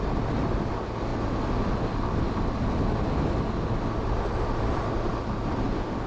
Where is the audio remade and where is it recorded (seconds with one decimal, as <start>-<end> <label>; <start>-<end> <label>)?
0.0-6.1 recorded